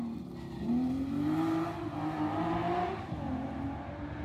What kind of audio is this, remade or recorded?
recorded